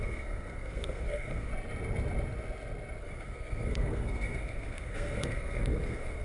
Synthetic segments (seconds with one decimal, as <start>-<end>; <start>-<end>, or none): 0.0-1.5; 3.0-6.2